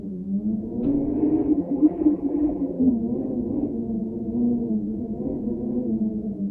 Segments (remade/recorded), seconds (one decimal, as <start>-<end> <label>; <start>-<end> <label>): 0.0-1.5 recorded; 1.5-2.9 remade; 2.9-6.5 recorded